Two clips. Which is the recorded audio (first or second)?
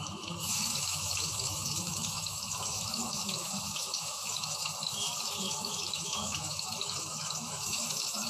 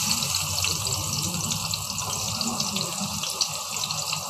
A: second